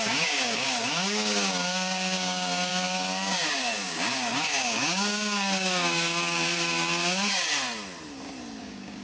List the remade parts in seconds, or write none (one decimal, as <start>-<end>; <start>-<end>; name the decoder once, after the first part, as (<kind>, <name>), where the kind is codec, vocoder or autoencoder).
0.0-7.5 (codec, DAC); 8.6-9.0

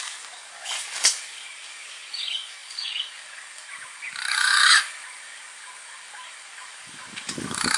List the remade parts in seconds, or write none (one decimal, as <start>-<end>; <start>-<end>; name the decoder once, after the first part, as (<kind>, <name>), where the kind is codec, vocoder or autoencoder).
0.0-7.8 (codec, DAC)

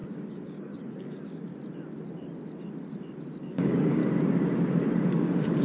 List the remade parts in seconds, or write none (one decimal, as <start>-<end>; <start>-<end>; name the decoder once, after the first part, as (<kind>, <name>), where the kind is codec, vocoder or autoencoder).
0.0-1.5 (codec, DAC); 3.4-4.0; 5.1-5.6

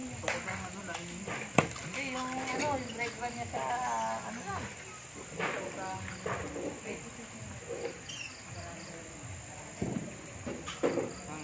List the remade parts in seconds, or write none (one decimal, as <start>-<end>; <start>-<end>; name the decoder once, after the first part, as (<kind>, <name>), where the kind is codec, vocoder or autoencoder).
none

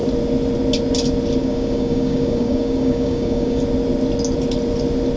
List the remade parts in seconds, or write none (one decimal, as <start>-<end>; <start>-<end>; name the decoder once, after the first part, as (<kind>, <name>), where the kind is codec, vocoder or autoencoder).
1.4-3.6 (codec, DAC)

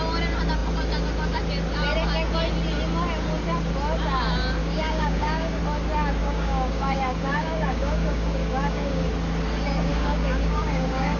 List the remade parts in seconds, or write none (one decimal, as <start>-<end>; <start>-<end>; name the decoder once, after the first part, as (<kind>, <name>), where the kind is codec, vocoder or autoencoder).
4.6-5.6 (codec, DAC); 6.2-9.1; 9.9-11.2

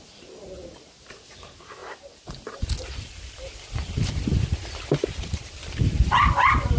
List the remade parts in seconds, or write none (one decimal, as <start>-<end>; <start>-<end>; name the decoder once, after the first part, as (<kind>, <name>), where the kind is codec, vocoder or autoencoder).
none

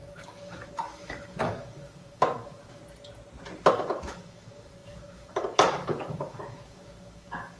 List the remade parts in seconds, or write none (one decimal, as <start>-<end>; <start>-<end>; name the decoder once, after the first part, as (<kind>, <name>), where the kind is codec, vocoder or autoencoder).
0.0-2.8 (codec, DAC); 3.7-7.6